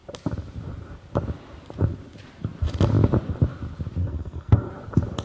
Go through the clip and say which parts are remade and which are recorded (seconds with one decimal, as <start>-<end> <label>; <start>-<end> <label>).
0.0-4.0 recorded; 4.0-4.7 remade; 4.7-5.2 recorded